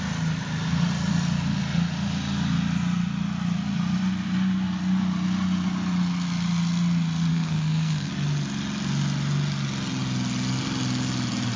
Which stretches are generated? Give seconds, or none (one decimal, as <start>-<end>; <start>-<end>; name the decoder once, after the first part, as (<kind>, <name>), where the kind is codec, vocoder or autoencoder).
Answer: 7.3-8.1 (codec, SNAC)